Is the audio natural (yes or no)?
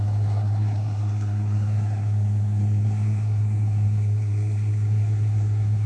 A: no